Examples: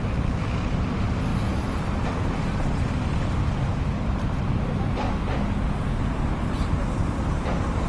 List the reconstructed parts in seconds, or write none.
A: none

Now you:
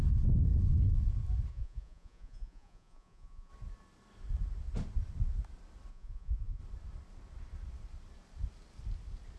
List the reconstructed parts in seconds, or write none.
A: 1.5-3.5; 5.9-6.6